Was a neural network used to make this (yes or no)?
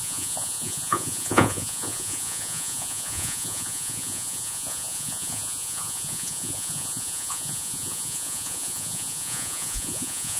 yes